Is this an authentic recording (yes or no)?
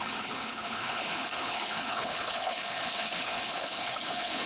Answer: no